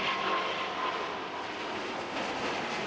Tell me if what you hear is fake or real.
real